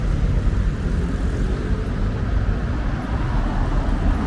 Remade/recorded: recorded